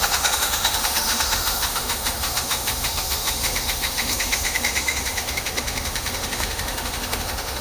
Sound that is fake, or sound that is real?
fake